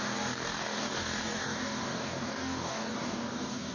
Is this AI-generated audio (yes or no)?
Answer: yes